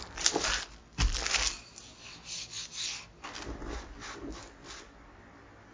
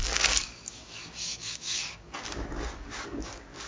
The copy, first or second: second